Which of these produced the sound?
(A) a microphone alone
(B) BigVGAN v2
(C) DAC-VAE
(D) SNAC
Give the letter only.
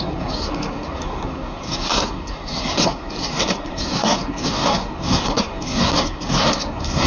D